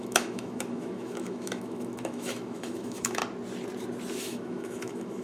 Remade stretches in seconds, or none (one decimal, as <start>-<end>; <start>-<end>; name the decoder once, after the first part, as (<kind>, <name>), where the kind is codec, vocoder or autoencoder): 0.0-3.2 (autoencoder, DAC-VAE); 4.2-5.2